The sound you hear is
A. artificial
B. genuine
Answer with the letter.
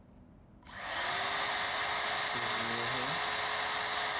B